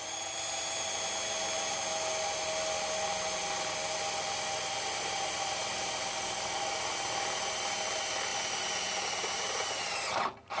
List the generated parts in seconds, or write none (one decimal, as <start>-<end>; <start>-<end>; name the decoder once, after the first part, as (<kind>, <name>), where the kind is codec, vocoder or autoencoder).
none